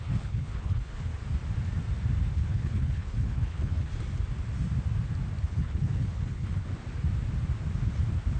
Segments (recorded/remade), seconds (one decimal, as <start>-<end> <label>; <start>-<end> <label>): 0.0-1.1 remade; 1.1-2.3 recorded; 2.3-3.9 remade; 3.9-5.4 recorded; 5.4-6.7 remade; 6.7-8.4 recorded